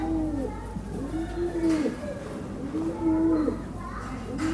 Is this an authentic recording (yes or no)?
yes